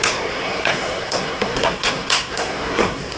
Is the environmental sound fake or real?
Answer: fake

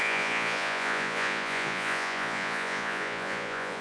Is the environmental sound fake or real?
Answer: fake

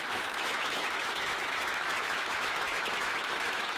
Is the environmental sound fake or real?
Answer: fake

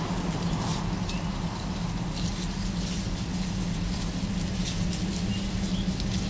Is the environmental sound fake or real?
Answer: real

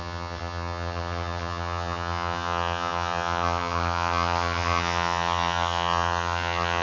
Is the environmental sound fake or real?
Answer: fake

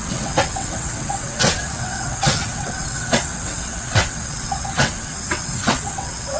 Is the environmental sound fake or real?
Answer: fake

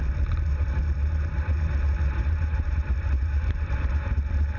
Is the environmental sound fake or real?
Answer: fake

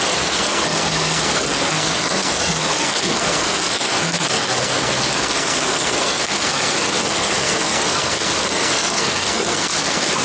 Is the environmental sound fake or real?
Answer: fake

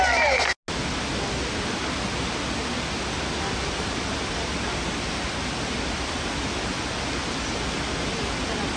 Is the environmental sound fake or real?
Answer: real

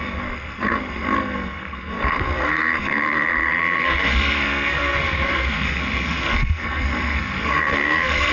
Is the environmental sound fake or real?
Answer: fake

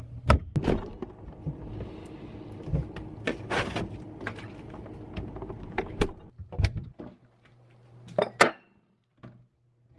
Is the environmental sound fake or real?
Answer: real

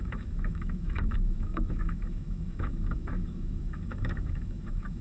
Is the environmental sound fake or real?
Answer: fake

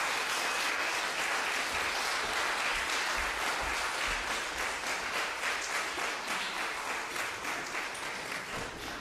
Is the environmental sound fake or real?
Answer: real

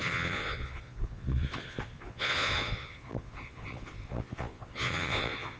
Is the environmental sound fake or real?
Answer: fake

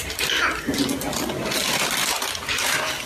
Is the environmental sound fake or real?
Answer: fake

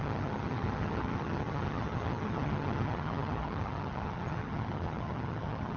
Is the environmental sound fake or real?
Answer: fake